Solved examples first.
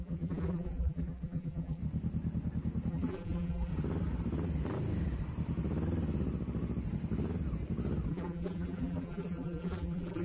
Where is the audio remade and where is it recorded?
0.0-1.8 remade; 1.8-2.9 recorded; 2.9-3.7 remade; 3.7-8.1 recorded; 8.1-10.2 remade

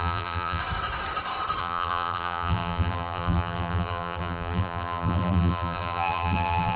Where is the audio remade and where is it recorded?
0.0-0.6 remade; 0.6-1.6 recorded; 1.6-6.8 remade

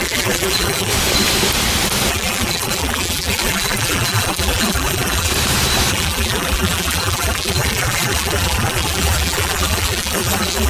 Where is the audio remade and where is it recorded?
0.0-0.9 remade; 0.9-2.1 recorded; 2.1-5.3 remade; 5.3-5.9 recorded; 5.9-10.7 remade

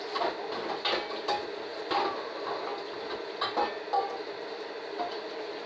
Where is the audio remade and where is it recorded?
0.0-1.7 recorded; 1.7-2.3 remade; 2.3-5.7 recorded

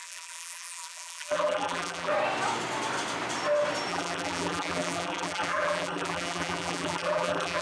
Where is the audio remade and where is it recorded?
0.0-2.1 remade; 2.1-3.9 recorded; 3.9-7.6 remade

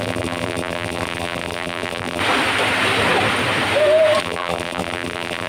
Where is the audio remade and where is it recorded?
0.0-2.2 remade; 2.2-4.2 recorded; 4.2-5.5 remade

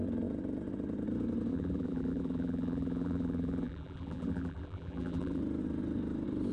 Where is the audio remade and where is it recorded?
0.0-1.5 recorded; 1.5-5.4 remade; 5.4-6.5 recorded

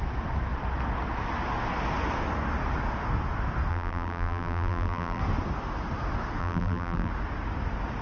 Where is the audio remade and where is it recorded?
0.0-3.7 recorded; 3.7-5.2 remade; 5.2-6.4 recorded; 6.4-7.1 remade; 7.1-8.0 recorded